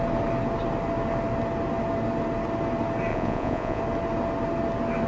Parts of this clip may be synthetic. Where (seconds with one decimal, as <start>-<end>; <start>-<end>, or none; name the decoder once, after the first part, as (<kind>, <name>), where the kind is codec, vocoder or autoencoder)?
3.1-3.8 (vocoder, Vocos)